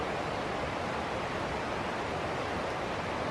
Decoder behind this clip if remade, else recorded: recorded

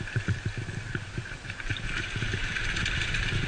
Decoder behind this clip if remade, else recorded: remade, vocoder, BigVGAN v2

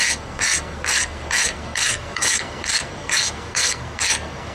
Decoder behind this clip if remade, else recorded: remade, codec, SNAC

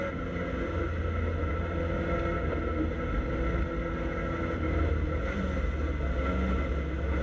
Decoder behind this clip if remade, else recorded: recorded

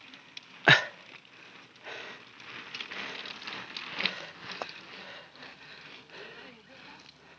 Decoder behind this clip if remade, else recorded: recorded